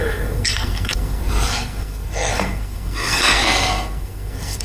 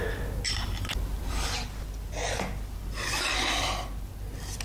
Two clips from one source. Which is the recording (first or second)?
second